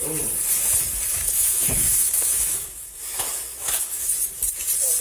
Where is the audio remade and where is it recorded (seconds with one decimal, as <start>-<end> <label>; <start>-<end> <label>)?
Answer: 0.0-1.1 recorded; 1.1-4.1 remade; 4.1-5.0 recorded